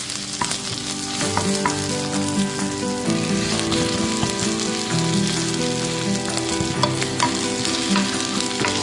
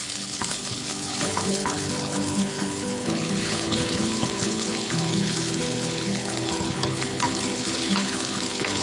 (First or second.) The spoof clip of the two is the second